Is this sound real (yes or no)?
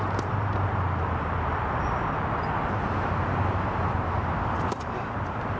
no